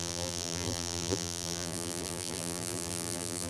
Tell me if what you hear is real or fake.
fake